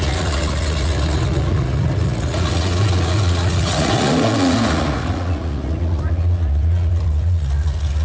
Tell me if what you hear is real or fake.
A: fake